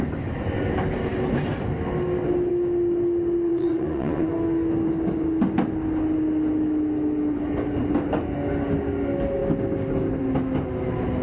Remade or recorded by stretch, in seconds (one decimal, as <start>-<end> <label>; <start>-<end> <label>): 0.0-3.5 recorded; 3.5-4.3 remade; 4.3-11.2 recorded